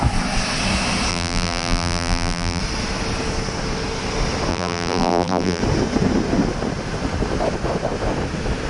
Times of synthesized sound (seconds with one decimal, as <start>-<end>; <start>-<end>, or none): 1.1-2.6; 4.5-5.6